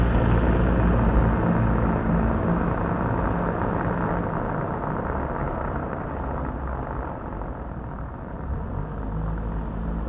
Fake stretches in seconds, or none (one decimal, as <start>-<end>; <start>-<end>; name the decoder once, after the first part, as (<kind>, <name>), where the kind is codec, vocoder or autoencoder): 5.4-6.1 (vocoder, BigVGAN v2)

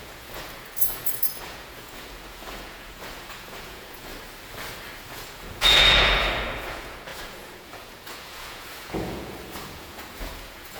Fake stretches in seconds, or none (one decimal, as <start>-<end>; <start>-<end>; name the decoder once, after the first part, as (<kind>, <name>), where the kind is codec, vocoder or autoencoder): 0.0-4.1 (vocoder, Vocos); 5.0-10.8